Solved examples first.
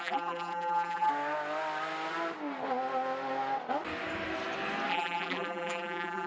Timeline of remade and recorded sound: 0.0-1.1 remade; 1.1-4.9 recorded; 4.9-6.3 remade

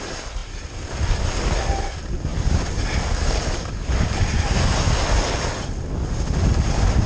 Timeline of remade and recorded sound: 0.0-7.1 recorded

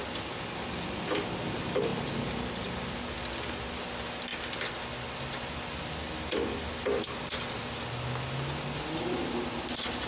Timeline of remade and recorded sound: 0.0-1.9 recorded; 1.9-2.6 remade; 2.6-10.1 recorded

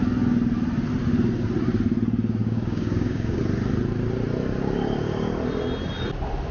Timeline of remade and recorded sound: 0.0-2.4 recorded; 2.4-3.4 remade; 3.4-6.5 recorded

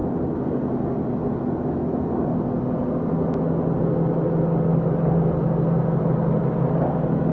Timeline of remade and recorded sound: 0.0-7.3 recorded

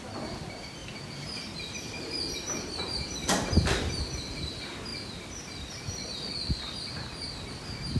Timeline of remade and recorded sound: 0.0-0.8 recorded; 0.8-4.5 remade; 4.5-4.9 recorded; 4.9-5.8 remade; 5.8-8.0 recorded

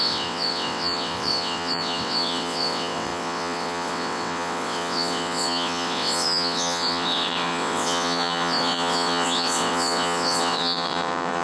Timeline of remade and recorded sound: 0.0-11.4 remade

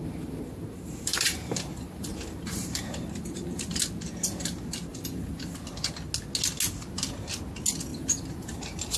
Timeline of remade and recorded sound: 0.0-3.8 remade; 3.8-4.9 recorded; 4.9-5.6 remade; 5.6-7.9 recorded; 7.9-9.0 remade